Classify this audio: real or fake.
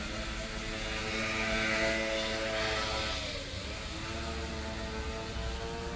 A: real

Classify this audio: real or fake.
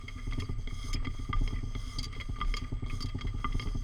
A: real